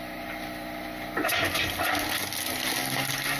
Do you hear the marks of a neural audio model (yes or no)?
no